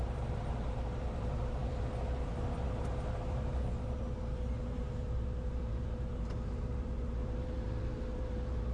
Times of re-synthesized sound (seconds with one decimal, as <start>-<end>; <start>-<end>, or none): 0.0-8.7